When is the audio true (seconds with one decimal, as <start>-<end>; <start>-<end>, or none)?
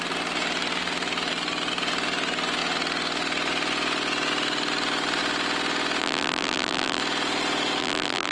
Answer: 0.0-6.0; 7.0-7.8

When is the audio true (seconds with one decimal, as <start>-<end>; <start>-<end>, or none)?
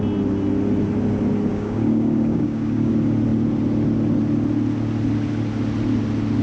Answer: 0.0-1.5; 2.9-6.4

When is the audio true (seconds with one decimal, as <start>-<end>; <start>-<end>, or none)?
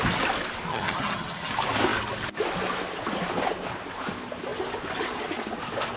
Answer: 0.0-0.7; 1.5-6.0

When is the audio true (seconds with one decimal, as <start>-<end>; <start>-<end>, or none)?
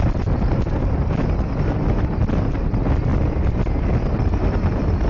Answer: 0.0-5.1